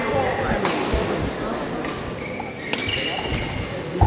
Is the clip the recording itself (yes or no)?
yes